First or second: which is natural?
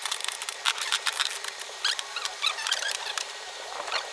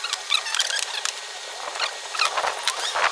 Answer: second